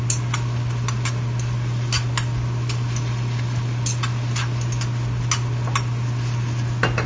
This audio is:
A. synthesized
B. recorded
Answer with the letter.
B